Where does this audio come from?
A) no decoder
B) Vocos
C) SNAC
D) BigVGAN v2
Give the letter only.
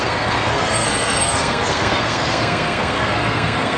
C